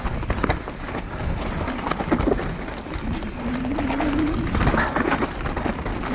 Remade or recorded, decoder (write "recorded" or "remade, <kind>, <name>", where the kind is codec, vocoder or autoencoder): recorded